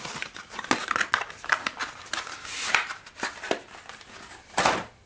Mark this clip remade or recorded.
recorded